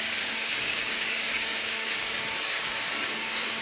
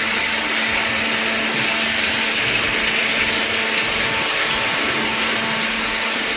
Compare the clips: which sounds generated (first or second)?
first